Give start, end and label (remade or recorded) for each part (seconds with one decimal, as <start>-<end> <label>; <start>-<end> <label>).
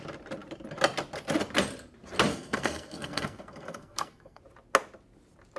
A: 0.0-2.3 recorded; 2.3-4.4 remade; 4.4-5.6 recorded